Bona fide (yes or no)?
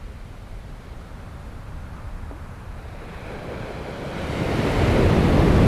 yes